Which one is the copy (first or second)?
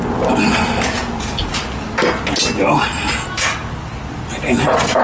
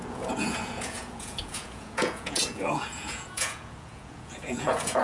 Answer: second